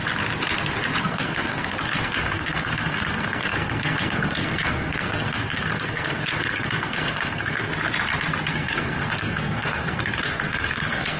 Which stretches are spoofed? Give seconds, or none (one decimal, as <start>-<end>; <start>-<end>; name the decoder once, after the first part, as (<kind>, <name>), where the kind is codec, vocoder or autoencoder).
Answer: 1.0-7.7 (codec, SNAC); 8.5-11.2